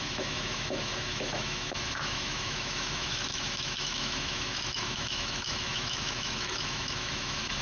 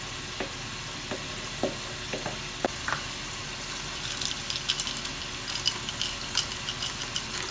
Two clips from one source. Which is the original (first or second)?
second